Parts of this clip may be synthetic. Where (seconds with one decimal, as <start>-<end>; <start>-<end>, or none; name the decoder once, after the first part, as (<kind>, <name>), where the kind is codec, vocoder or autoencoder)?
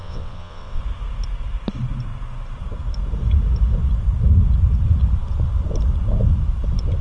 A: 0.0-0.8 (vocoder, WaveNeXt)